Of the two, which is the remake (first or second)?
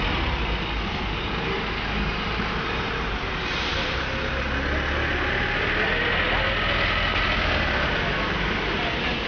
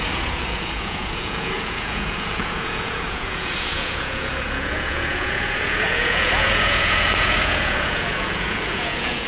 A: second